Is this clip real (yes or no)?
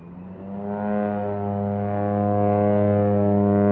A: yes